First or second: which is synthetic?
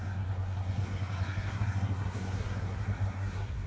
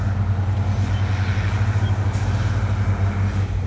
first